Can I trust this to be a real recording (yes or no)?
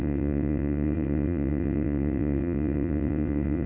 no